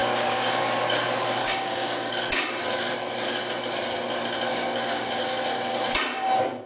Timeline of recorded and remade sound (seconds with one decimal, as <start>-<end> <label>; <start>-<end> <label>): 0.0-0.7 remade; 0.7-1.4 recorded; 1.4-2.1 remade; 2.1-4.5 recorded; 4.5-5.2 remade; 5.2-6.7 recorded